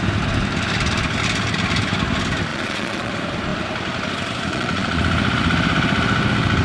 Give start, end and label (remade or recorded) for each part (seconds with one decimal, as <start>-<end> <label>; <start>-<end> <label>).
0.0-2.5 recorded; 2.5-3.1 remade; 3.1-4.5 recorded; 4.5-5.0 remade; 5.0-6.6 recorded